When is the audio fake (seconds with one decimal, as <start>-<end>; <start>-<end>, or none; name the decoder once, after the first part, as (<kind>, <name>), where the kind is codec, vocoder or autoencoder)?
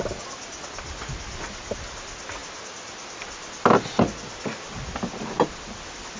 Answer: none